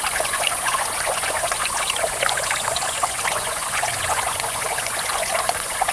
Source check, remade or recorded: remade